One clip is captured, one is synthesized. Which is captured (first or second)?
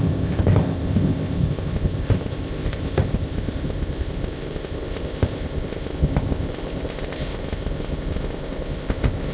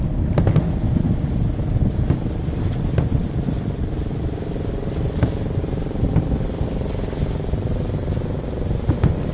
second